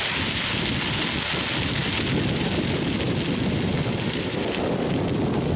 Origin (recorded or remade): recorded